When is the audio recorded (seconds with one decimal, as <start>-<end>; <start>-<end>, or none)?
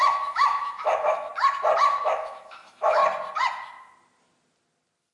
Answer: 1.3-1.9; 3.0-5.1